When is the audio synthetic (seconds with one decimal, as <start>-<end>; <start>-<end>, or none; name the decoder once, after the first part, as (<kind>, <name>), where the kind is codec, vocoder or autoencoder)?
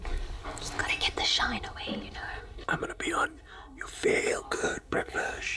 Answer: 0.0-0.8 (codec, DAC); 4.2-5.6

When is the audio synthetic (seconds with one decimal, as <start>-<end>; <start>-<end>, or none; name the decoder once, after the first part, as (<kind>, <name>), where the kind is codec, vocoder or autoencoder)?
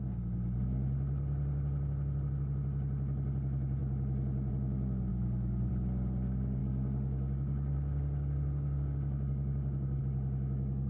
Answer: 5.1-5.7 (codec, DAC); 6.6-10.0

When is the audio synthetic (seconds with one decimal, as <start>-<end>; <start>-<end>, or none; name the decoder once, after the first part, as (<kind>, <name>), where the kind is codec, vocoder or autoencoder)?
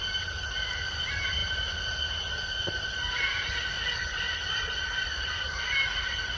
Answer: none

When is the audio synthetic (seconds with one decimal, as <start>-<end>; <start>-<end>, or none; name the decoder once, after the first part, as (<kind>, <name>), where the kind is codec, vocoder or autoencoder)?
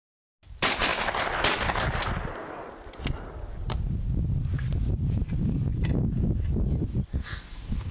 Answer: 7.2-7.9 (codec, SNAC)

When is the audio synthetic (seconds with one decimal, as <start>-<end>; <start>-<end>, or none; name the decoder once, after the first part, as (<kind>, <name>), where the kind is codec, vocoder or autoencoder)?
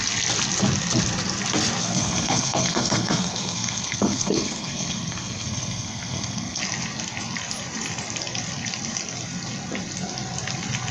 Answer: 1.8-6.6 (codec, SNAC)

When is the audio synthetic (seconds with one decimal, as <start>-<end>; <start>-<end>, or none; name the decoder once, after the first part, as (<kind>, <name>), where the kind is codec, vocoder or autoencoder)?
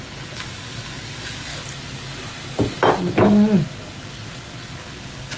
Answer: 0.0-1.5 (codec, DAC); 4.7-5.4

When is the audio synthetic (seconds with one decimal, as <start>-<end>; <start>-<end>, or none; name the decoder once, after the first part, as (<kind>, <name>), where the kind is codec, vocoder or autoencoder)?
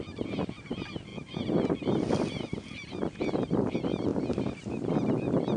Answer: none